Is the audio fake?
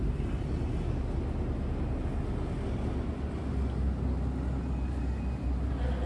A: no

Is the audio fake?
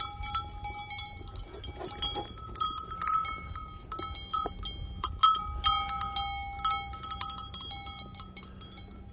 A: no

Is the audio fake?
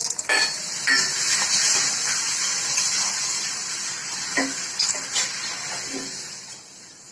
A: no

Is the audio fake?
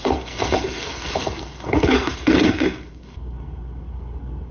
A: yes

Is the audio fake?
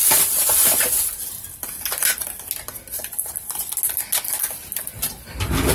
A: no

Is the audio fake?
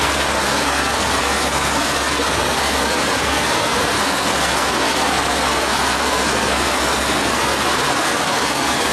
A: yes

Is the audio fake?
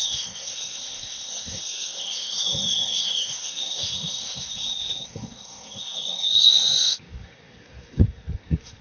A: yes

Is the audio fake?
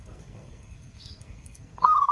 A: yes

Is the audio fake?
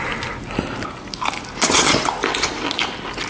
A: no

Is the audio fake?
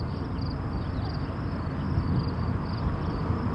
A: no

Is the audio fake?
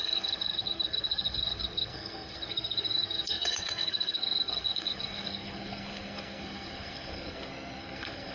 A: yes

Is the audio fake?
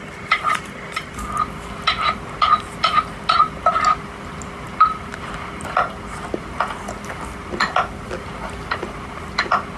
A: no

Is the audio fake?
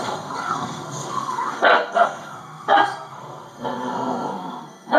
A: yes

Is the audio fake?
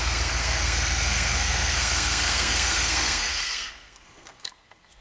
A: yes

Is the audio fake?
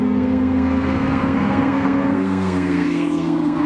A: yes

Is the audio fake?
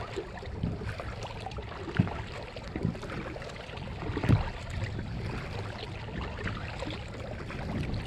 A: no